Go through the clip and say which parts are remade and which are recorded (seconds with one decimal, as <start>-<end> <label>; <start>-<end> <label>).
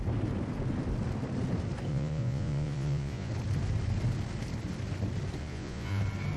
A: 0.0-1.9 recorded; 1.9-3.3 remade; 3.3-5.4 recorded; 5.4-6.0 remade; 6.0-6.4 recorded